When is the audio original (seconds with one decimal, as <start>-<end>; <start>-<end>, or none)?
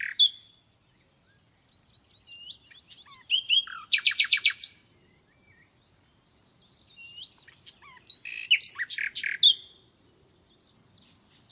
0.0-11.5